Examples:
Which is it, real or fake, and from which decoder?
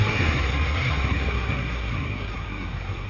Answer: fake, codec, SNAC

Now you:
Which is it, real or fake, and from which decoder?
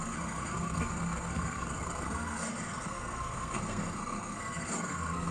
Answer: fake, codec, SNAC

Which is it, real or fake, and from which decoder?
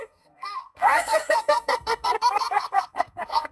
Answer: fake, codec, SNAC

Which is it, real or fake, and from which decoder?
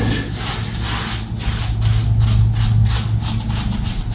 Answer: real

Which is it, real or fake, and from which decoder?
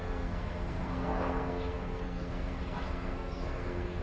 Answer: fake, codec, SNAC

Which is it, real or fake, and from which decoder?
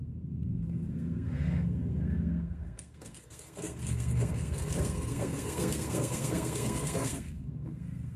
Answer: fake, codec, SNAC